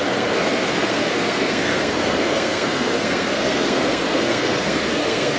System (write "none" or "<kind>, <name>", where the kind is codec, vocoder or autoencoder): codec, SNAC